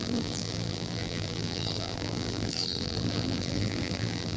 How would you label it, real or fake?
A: fake